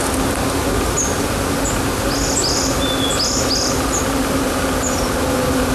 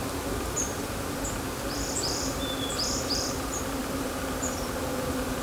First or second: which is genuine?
first